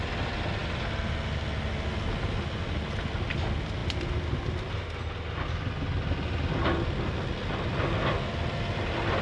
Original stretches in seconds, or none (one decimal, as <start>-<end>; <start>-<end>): 0.0-9.2